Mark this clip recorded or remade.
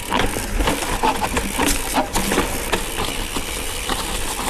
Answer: recorded